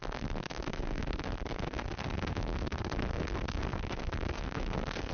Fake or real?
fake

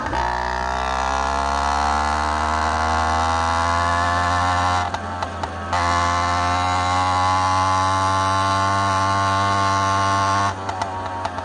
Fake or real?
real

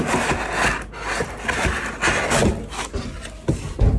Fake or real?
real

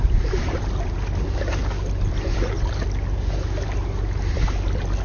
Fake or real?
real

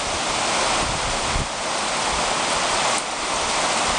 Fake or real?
real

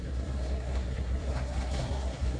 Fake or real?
fake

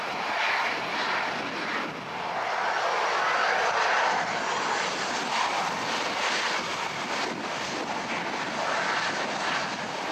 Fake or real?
real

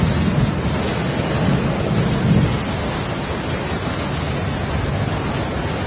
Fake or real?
real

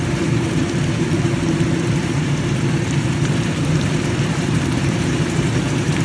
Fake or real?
fake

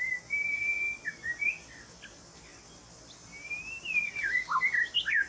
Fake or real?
real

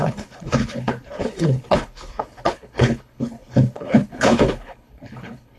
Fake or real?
fake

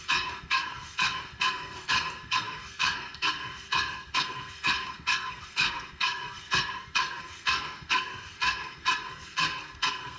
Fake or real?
fake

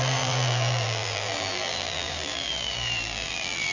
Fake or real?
fake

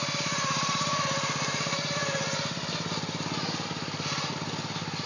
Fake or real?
real